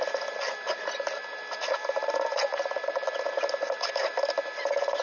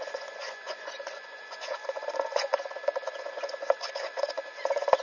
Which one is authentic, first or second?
first